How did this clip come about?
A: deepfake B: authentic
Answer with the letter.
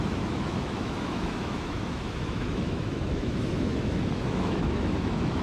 A